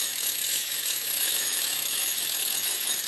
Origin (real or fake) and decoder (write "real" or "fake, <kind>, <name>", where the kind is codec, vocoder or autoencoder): fake, autoencoder, DAC-VAE